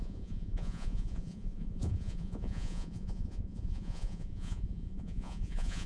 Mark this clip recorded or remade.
remade